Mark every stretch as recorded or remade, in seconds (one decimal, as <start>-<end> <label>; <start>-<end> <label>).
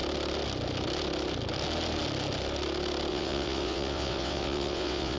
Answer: 0.0-3.1 recorded; 3.1-5.2 remade